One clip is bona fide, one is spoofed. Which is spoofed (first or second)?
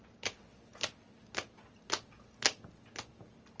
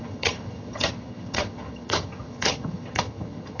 second